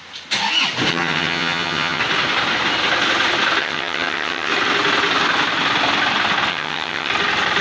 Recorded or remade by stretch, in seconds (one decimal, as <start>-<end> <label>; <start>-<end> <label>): 0.0-0.9 recorded; 0.9-2.0 remade; 2.0-3.6 recorded; 3.6-4.5 remade; 4.5-6.5 recorded; 6.5-7.1 remade; 7.1-7.6 recorded